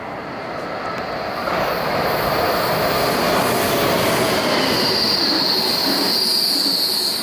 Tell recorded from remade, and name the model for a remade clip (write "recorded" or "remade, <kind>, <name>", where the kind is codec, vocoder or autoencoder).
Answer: recorded